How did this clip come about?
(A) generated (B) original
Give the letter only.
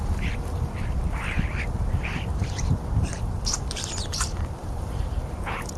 A